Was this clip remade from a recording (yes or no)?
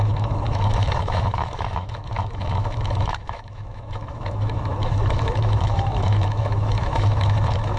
yes